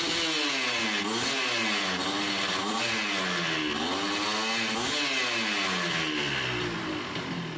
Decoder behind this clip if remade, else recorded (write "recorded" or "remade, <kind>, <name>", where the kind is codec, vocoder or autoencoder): recorded